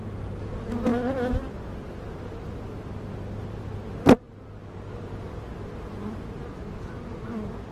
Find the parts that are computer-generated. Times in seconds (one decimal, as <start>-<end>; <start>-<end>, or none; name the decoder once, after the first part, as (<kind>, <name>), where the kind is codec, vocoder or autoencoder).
none